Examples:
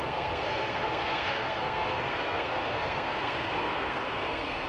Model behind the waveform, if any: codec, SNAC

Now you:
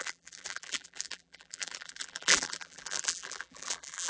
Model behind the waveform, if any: vocoder, BigVGAN v2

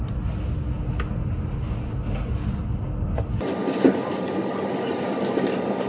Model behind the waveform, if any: none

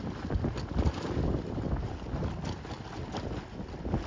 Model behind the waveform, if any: none